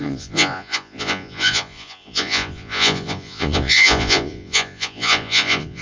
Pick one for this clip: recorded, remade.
remade